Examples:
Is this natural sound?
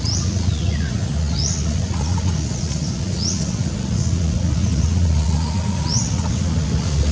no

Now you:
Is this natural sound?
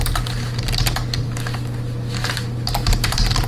yes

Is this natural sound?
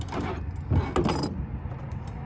yes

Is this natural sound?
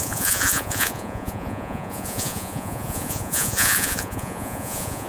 no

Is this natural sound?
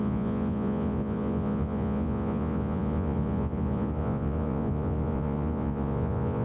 no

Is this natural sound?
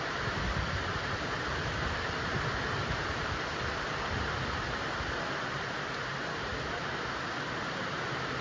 yes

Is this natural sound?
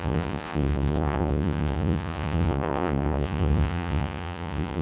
no